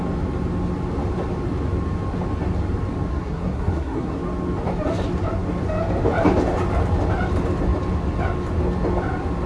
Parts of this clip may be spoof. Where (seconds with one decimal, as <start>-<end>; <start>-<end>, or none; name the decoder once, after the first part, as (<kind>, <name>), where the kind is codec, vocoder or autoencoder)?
3.1-4.2 (codec, SNAC)